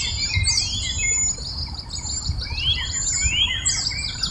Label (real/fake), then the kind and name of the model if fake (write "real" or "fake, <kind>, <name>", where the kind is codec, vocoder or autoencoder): real